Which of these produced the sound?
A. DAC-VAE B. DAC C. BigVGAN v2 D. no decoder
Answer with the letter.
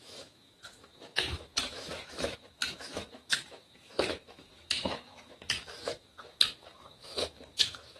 A